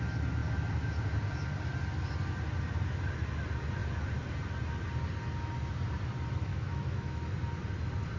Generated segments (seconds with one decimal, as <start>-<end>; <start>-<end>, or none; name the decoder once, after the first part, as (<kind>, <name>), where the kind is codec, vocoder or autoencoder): 6.5-7.2 (autoencoder, DAC-VAE)